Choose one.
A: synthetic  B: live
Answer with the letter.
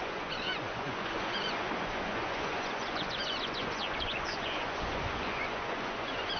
A